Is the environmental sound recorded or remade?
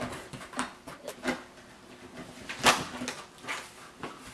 recorded